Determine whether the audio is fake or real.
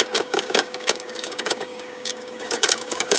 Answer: fake